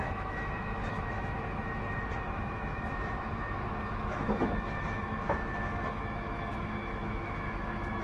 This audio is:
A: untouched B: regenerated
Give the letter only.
B